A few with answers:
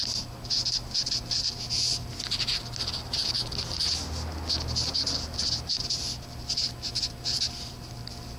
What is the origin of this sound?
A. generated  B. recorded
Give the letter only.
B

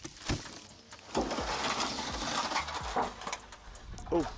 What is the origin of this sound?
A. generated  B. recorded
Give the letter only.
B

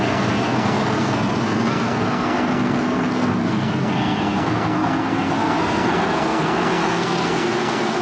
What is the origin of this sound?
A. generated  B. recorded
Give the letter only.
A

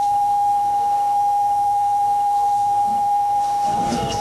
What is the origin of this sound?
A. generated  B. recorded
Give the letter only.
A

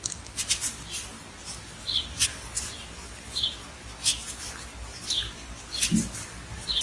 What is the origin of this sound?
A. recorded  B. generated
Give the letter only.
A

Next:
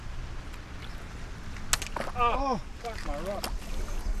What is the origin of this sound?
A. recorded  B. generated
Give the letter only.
A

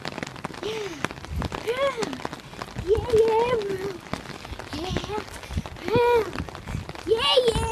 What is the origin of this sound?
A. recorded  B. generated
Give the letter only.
A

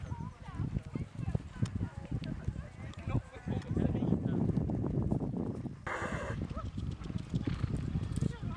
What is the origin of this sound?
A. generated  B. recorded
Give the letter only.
B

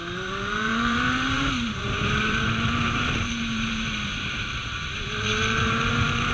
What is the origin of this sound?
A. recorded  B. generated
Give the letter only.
B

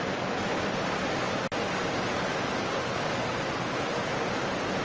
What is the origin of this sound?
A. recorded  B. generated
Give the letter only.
A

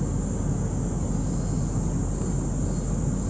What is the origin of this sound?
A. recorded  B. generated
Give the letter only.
A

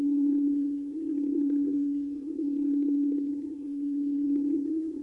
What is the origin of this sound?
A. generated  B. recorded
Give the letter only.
A